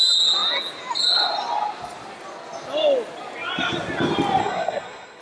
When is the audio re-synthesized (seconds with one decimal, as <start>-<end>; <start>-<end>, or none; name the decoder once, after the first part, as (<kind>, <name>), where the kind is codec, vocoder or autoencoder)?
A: 4.4-5.2 (codec, SNAC)